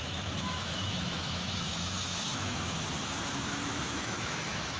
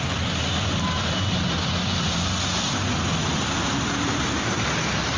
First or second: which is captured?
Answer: second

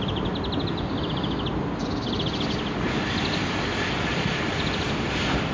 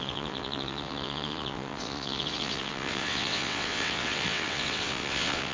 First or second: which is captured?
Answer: first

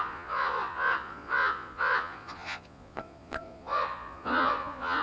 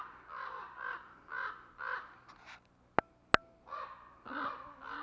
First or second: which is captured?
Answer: second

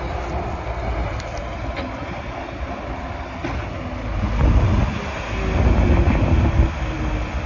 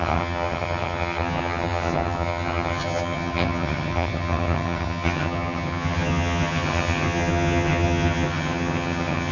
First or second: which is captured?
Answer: first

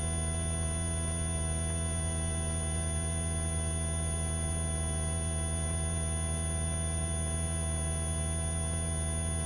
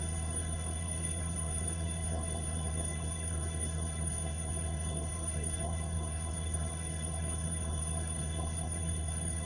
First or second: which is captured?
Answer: first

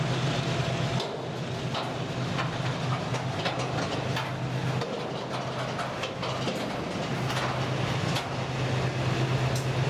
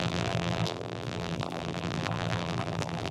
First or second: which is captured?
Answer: first